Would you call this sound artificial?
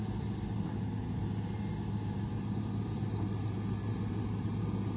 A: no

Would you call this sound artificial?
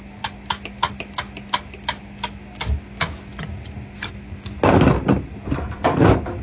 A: no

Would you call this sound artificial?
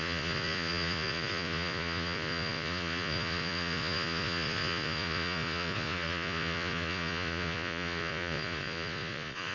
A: yes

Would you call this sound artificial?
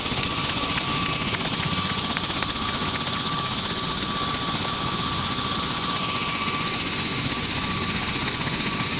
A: yes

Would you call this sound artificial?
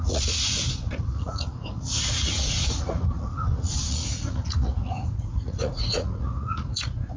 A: yes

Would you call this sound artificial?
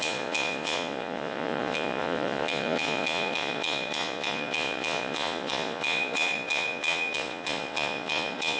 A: yes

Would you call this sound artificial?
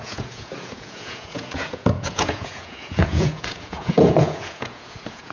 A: yes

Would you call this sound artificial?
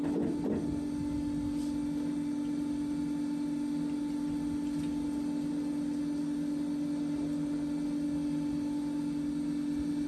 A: no